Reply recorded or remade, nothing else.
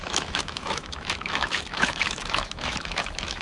remade